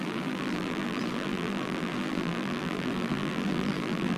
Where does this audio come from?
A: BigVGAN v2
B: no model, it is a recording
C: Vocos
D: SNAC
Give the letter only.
A